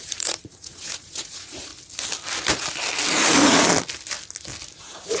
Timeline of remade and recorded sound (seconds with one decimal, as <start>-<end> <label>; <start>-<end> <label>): 0.0-1.7 remade; 1.7-4.8 recorded; 4.8-5.2 remade